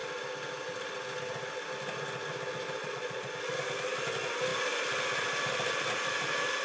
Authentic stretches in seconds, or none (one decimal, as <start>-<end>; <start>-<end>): 0.0-2.8; 3.3-6.6